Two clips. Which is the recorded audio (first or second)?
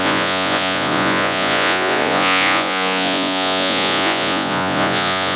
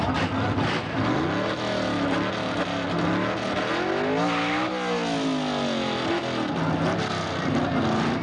second